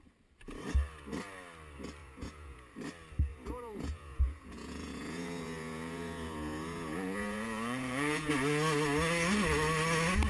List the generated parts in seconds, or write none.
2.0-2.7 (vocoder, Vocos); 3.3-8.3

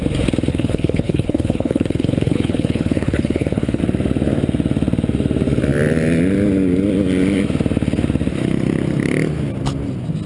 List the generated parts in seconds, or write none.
0.5-3.8 (codec, HILCodec)

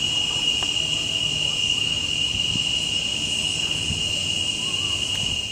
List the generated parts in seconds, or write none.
none

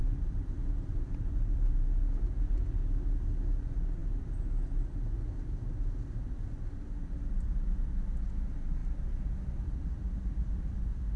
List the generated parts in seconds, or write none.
0.0-2.7 (vocoder, BigVGAN v2); 8.8-11.2